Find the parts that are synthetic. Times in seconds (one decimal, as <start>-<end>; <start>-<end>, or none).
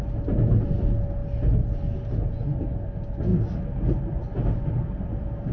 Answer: none